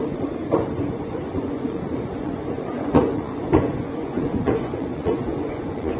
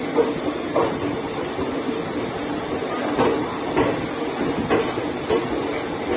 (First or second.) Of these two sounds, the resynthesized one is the first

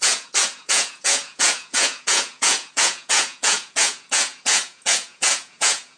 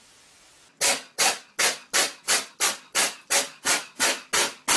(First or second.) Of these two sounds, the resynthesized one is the first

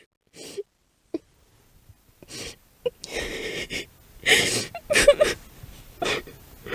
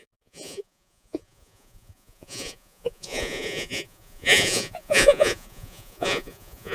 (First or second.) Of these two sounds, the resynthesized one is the second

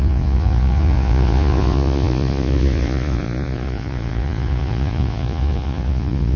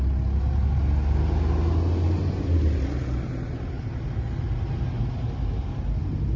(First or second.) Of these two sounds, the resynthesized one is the first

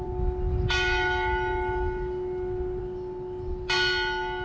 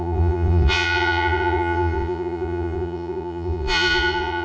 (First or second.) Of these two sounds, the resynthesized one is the second